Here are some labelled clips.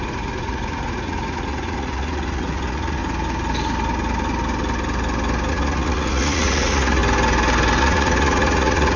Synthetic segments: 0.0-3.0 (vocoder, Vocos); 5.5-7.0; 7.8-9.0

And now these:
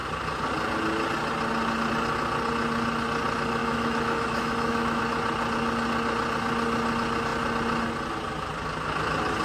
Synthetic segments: 3.6-5.0 (autoencoder, DAC-VAE)

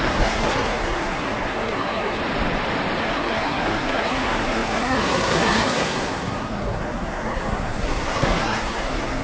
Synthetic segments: 0.0-2.2 (codec, SNAC); 3.0-9.2